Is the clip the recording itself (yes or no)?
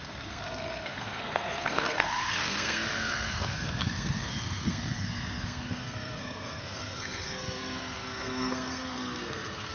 no